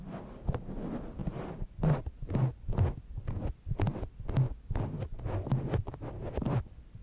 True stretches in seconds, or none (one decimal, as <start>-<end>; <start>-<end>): 0.0-7.0